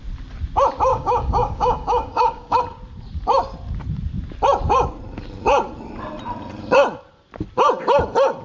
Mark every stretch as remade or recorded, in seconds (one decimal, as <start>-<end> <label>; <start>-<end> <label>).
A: 0.0-0.9 recorded; 0.9-2.6 remade; 2.6-8.4 recorded